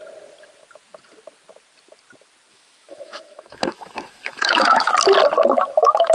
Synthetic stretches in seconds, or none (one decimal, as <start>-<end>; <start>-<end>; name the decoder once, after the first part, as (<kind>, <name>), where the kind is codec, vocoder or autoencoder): 2.5-4.9 (autoencoder, DAC-VAE)